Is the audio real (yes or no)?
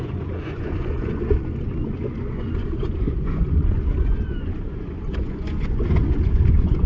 no